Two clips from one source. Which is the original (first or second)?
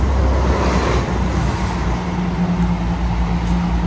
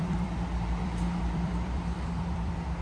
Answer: first